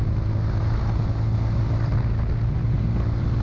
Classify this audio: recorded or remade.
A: recorded